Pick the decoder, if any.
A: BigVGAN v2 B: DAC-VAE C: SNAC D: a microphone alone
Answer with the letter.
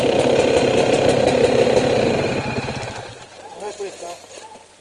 A